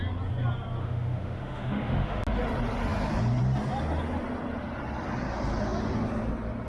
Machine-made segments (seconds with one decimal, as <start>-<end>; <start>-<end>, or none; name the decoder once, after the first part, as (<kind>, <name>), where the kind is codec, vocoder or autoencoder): 0.8-2.2 (autoencoder, DAC-VAE)